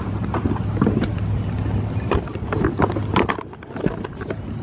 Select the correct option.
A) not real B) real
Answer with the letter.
B